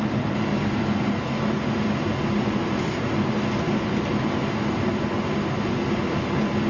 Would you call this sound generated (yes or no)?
no